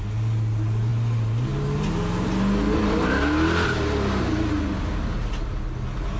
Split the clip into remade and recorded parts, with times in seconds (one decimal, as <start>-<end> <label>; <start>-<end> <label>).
0.0-6.2 recorded